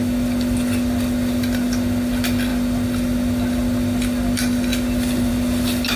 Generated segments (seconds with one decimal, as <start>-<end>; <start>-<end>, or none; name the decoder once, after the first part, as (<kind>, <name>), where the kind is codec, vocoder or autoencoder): none